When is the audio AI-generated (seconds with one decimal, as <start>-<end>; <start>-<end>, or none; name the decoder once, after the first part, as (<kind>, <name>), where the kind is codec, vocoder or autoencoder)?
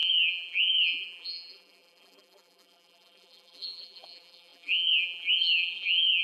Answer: 0.0-6.2 (vocoder, BigVGAN v2)